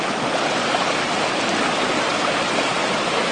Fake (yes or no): no